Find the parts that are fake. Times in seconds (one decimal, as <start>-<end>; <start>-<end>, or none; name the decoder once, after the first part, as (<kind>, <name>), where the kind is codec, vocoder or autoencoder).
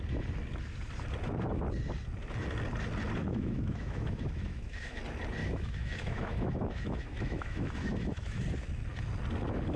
3.2-5.0 (autoencoder, DAC-VAE); 5.4-8.4